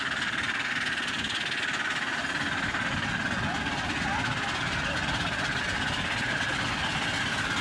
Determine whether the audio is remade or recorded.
recorded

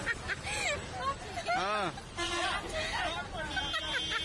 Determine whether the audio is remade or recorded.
recorded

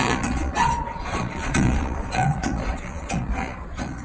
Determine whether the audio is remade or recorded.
remade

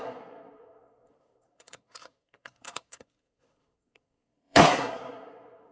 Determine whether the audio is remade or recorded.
remade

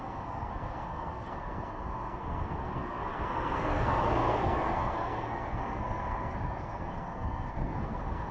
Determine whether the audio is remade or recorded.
remade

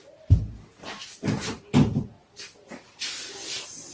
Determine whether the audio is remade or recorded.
recorded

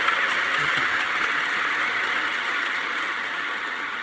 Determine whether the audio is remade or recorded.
remade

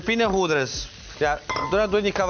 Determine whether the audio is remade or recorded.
recorded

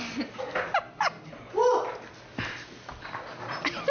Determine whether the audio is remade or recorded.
recorded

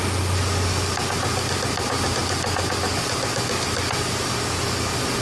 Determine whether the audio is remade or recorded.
recorded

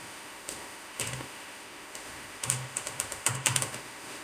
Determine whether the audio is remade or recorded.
remade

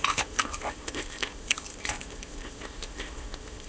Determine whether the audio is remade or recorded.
remade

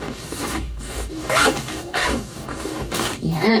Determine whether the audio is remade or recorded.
remade